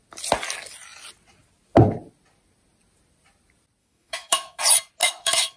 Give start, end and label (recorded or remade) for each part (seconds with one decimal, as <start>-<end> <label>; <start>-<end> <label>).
0.0-3.8 recorded; 3.8-4.6 remade; 4.6-5.0 recorded; 5.0-5.6 remade